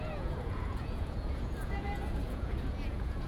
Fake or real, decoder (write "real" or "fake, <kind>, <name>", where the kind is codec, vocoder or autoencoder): fake, vocoder, Vocos